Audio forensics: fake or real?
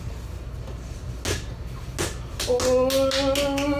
real